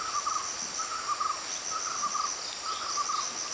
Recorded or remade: recorded